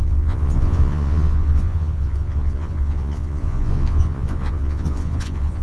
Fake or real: fake